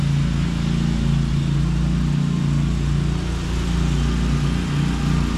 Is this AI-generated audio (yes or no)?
no